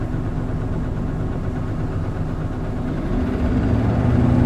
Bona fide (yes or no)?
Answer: yes